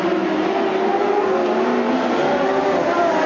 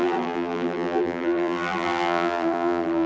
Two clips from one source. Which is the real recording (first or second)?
first